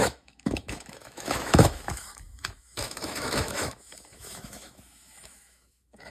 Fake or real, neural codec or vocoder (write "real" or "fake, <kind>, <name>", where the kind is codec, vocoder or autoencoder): fake, autoencoder, DAC-VAE